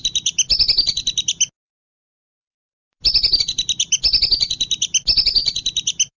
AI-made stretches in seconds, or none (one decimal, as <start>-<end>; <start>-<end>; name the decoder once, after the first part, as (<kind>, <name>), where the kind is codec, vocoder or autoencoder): none